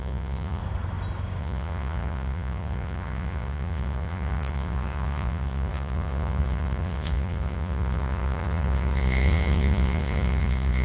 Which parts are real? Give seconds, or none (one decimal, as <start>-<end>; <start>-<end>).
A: 0.6-1.4